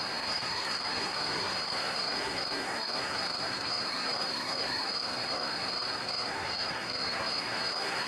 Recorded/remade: remade